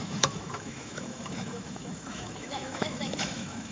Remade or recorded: remade